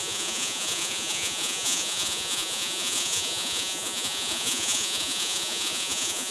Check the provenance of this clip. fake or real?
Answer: fake